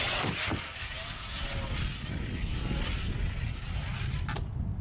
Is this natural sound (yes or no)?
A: yes